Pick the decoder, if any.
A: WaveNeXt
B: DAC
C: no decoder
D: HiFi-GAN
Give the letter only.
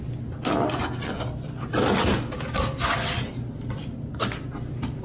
C